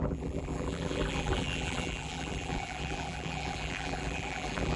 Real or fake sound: fake